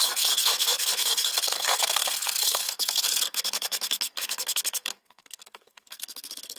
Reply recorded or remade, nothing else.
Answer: remade